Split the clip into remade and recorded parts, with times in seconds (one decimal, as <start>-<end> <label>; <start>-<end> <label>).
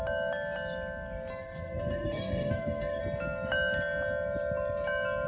0.0-1.4 recorded; 1.4-3.0 remade; 3.0-5.3 recorded